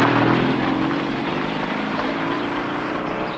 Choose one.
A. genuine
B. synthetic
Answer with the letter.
B